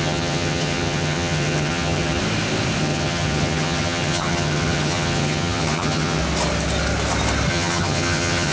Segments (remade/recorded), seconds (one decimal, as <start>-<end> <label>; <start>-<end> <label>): 0.0-2.2 remade; 2.2-2.8 recorded; 2.8-6.2 remade; 6.2-7.5 recorded; 7.5-8.5 remade